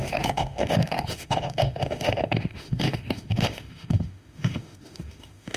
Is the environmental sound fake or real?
fake